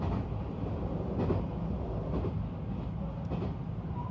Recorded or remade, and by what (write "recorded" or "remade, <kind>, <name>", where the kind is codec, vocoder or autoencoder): recorded